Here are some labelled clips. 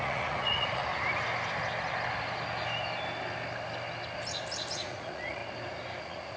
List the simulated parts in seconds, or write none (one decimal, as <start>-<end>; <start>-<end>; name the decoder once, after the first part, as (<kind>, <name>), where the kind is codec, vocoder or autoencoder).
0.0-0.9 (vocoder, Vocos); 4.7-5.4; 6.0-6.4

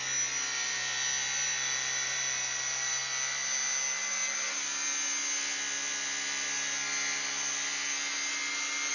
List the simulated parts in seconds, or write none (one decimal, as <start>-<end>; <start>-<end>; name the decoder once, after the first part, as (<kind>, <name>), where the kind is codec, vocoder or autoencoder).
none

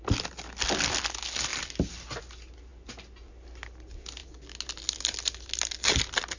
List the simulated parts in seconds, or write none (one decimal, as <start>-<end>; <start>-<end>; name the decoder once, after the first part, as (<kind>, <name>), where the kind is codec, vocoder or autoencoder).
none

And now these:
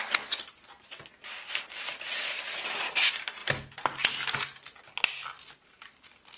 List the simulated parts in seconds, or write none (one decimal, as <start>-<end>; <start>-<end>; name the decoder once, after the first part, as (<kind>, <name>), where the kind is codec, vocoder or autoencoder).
none

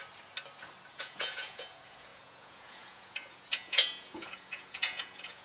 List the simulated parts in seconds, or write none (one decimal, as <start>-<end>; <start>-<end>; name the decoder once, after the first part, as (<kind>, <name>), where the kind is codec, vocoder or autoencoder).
0.9-5.4 (vocoder, Vocos)

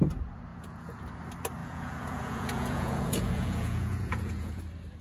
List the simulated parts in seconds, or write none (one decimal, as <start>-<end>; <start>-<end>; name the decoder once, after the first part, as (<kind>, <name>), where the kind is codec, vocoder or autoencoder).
0.5-1.0 (vocoder, Vocos); 1.6-4.6

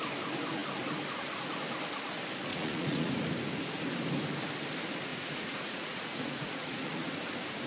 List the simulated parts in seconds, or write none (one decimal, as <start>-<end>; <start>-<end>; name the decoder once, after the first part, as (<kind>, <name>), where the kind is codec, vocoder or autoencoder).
2.5-3.1 (vocoder, Vocos); 5.1-7.1